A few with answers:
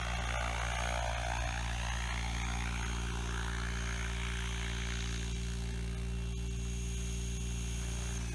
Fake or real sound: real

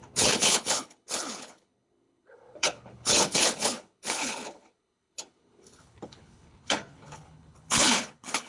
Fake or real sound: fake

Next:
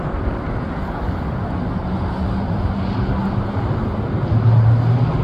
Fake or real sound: real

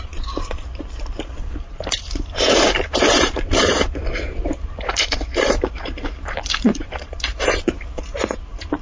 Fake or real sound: fake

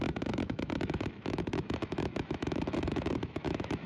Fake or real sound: fake